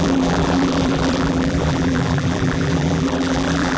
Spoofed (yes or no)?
yes